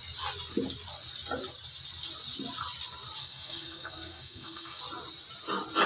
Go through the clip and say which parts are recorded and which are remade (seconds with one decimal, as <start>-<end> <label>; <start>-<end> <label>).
0.0-3.2 recorded; 3.2-4.8 remade; 4.8-5.9 recorded